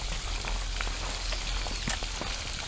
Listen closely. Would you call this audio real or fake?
real